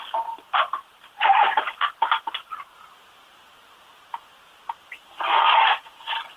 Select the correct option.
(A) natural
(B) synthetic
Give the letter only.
B